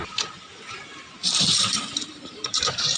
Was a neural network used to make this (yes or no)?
yes